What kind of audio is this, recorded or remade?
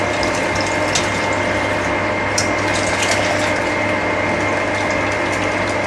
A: recorded